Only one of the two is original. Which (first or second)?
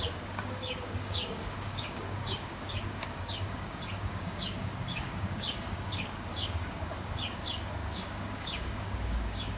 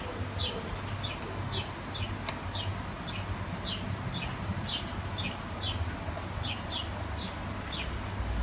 second